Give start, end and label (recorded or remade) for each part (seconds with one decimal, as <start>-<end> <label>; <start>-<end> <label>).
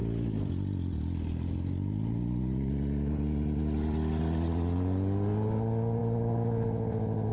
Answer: 0.0-7.3 recorded